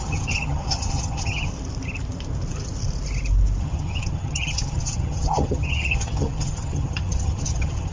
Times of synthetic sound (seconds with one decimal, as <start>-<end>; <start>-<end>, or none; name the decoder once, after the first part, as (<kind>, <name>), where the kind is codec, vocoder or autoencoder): 0.0-1.5 (vocoder, HiFi-GAN); 3.6-7.9